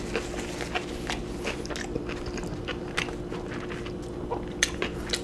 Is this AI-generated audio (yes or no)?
no